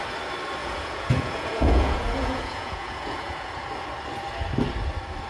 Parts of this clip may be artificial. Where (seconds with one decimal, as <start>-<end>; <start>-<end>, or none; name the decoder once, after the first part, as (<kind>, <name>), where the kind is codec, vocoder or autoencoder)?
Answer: 0.6-3.6 (vocoder, Vocos)